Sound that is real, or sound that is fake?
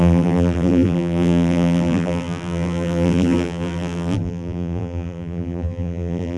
fake